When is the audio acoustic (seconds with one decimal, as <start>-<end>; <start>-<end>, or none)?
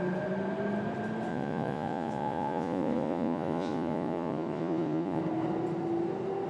0.0-1.3; 5.2-6.5